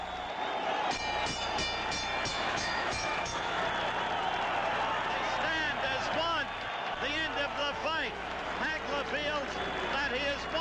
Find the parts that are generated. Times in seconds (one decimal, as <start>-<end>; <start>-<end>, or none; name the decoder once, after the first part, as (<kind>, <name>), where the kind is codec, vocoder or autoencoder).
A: 2.3-3.6 (autoencoder, DAC-VAE); 7.6-8.5